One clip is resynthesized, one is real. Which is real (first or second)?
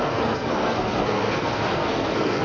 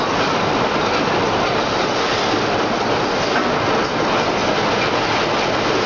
second